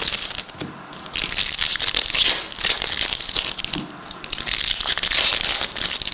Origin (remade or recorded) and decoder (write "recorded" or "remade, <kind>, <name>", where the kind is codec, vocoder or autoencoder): recorded